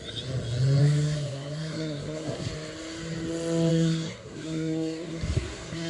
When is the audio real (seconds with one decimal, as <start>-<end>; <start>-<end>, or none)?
0.0-0.8; 2.5-3.7